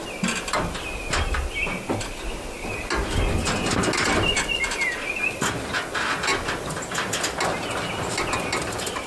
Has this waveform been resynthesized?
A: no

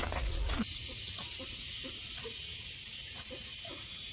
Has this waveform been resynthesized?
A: yes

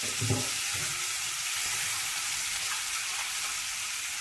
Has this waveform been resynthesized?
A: no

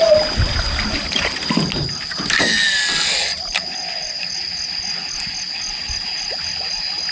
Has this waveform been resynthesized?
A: no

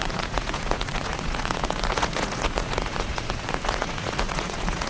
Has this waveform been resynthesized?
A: yes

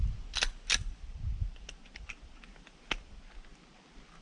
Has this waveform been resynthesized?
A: no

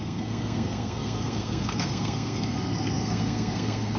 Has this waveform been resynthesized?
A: yes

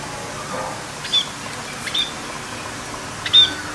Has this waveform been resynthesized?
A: no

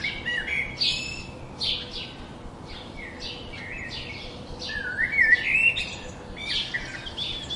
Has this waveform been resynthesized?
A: no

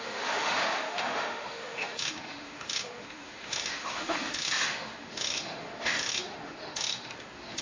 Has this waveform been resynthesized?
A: yes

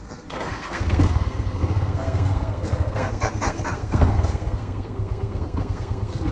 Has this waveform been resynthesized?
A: yes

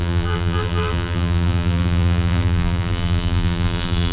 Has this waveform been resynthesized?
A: yes